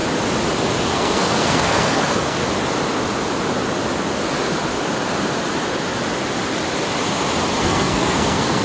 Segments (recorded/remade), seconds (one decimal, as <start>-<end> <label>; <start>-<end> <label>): 0.0-0.9 recorded; 0.9-2.4 remade; 2.4-7.6 recorded; 7.6-8.6 remade